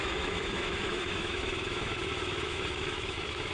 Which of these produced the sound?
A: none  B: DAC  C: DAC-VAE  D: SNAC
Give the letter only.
C